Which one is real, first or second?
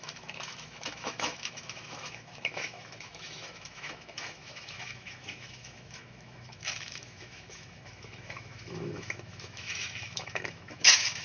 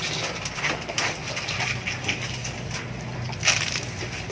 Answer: second